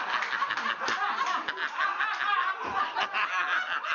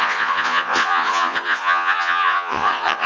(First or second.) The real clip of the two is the first